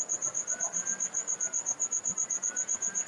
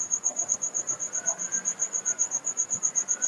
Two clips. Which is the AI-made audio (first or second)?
second